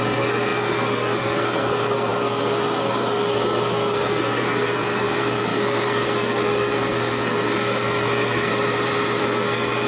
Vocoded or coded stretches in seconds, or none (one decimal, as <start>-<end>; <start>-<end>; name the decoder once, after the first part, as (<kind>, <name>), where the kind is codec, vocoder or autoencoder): 0.0-8.5 (codec, SNAC); 9.2-9.9